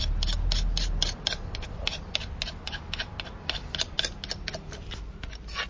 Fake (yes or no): no